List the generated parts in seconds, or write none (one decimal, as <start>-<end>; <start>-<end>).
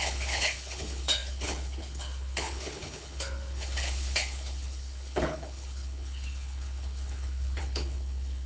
0.0-8.5